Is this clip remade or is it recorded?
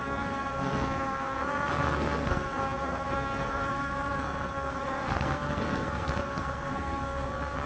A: remade